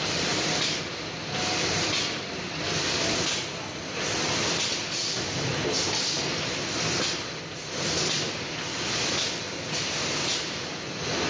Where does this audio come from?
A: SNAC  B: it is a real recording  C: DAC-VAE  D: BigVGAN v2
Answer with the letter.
B